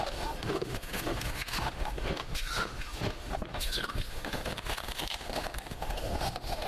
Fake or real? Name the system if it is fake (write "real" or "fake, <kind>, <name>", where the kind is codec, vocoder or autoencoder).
fake, autoencoder, DAC-VAE